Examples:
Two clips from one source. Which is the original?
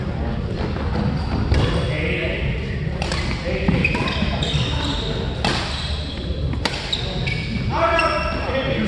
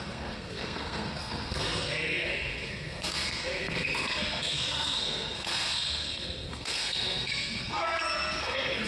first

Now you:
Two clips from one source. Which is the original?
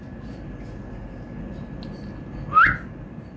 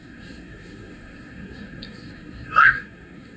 first